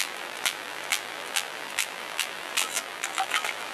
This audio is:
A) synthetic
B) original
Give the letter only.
A